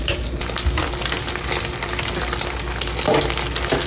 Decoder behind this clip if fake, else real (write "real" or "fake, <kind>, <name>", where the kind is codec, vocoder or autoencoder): real